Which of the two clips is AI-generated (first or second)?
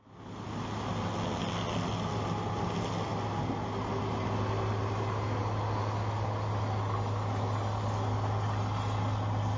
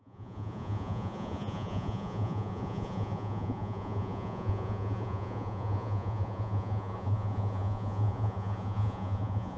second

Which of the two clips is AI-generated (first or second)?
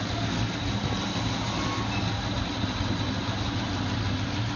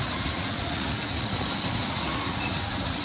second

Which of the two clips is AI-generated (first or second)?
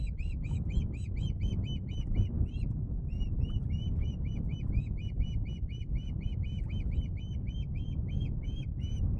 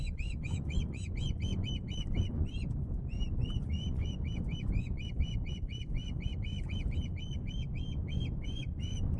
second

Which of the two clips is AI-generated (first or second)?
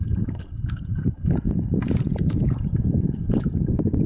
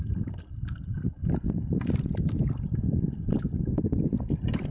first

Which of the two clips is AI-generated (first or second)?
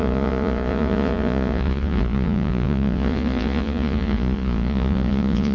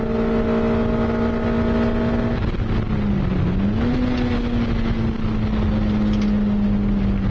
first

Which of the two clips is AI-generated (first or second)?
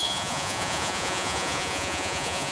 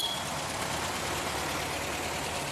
first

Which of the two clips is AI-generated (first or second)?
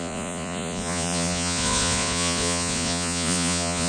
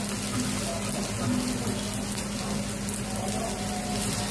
first